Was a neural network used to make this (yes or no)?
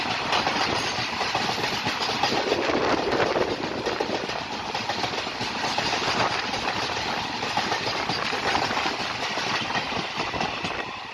no